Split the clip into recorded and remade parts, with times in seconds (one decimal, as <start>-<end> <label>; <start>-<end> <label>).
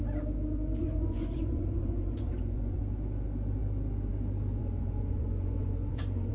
0.0-0.8 recorded; 0.8-2.8 remade; 2.8-4.6 recorded; 4.6-6.3 remade